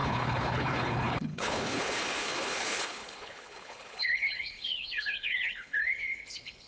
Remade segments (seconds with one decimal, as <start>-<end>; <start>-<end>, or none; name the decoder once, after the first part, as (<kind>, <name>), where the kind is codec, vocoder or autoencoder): 0.0-6.7 (codec, HILCodec)